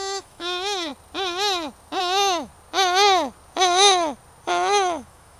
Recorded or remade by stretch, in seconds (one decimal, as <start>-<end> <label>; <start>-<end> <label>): 0.0-0.9 remade; 0.9-2.0 recorded; 2.0-2.5 remade; 2.5-4.5 recorded; 4.5-5.4 remade